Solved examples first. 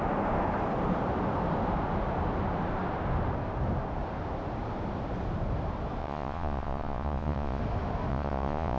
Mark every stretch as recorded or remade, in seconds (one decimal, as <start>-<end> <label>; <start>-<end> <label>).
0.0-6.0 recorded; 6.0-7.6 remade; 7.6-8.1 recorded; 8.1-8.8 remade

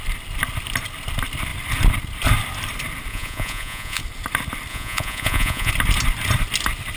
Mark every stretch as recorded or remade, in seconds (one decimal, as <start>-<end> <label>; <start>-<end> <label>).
0.0-3.1 recorded; 3.1-4.0 remade; 4.0-4.7 recorded; 4.7-5.7 remade; 5.7-7.0 recorded

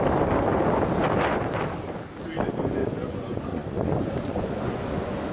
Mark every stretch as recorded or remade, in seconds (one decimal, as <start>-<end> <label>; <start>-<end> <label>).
0.0-2.8 recorded; 2.8-5.3 remade